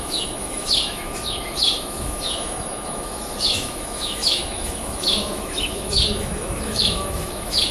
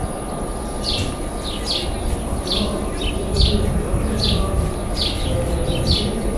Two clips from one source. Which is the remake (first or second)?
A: first